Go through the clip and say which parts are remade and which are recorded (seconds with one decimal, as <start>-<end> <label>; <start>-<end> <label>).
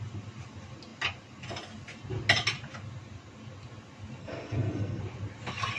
0.0-4.2 recorded; 4.2-5.0 remade; 5.0-5.8 recorded